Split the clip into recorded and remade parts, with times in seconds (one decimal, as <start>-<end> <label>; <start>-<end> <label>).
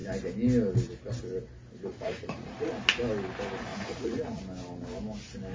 0.0-1.9 recorded; 1.9-2.7 remade; 2.7-3.7 recorded; 3.7-4.4 remade; 4.4-5.5 recorded